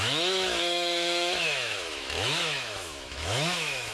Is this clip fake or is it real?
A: fake